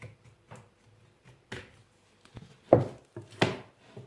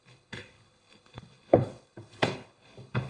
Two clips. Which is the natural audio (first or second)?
first